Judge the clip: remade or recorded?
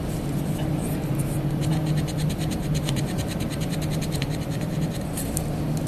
recorded